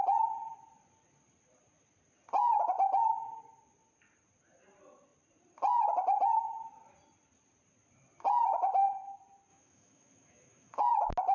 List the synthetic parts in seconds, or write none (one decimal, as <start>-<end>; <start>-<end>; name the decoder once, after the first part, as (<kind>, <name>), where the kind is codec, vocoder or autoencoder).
9.5-10.8 (autoencoder, DAC-VAE)